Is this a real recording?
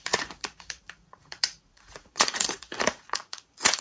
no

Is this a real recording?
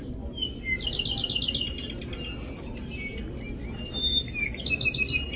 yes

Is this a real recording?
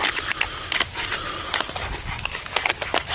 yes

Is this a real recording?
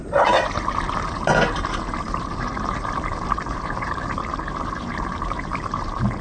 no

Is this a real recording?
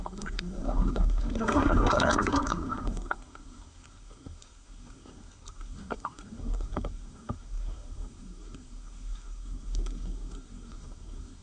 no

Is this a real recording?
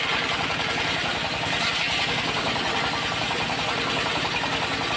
yes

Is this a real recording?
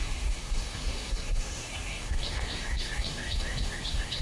no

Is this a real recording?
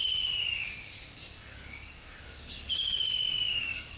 no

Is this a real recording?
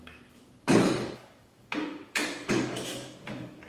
no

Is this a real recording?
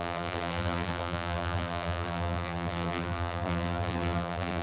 no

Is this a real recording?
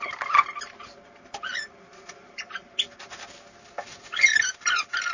no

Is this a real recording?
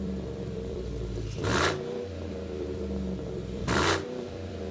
no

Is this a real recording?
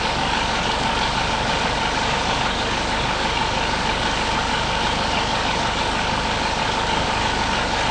no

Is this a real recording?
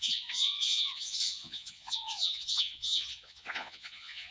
no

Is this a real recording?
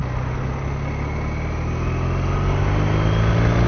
yes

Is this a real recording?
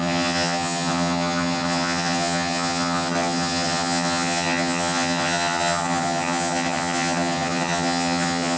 no